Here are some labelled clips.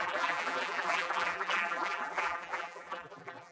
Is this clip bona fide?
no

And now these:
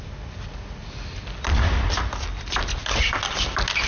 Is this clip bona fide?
yes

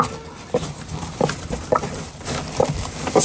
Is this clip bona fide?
yes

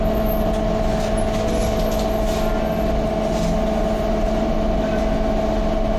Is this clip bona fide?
yes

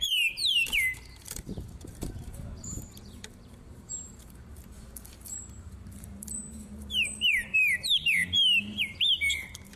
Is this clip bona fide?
no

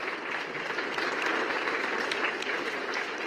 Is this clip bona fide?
yes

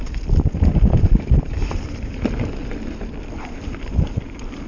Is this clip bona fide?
no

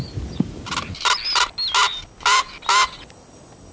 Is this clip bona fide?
yes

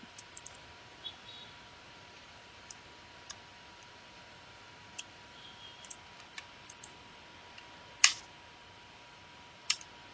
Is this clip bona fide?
no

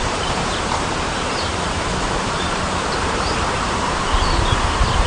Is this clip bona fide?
no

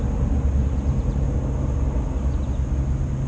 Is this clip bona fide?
yes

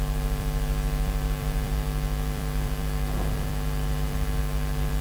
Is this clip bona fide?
no